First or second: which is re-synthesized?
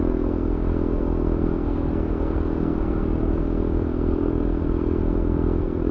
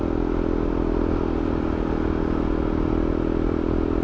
first